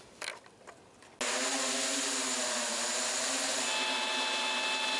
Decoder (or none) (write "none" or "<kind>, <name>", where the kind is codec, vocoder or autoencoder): none